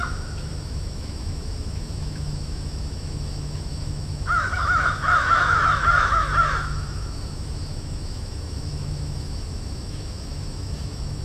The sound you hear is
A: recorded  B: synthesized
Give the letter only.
B